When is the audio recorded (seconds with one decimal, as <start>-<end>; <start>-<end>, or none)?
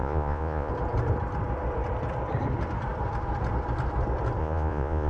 0.7-4.4